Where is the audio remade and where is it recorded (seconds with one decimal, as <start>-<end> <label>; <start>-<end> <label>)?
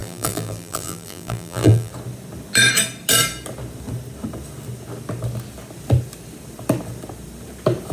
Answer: 0.0-1.9 remade; 1.9-7.9 recorded